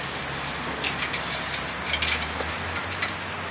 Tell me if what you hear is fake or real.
real